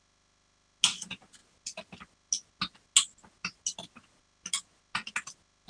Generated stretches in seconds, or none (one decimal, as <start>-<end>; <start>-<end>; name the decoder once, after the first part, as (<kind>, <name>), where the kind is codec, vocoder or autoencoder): none